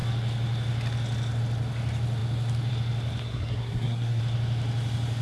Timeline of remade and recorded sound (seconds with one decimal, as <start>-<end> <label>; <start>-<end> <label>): 0.0-3.2 recorded; 3.2-4.2 remade; 4.2-5.2 recorded